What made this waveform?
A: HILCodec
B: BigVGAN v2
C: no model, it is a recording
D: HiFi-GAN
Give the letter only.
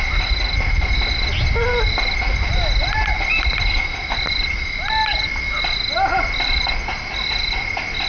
C